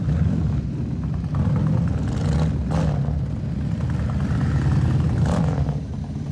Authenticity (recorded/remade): recorded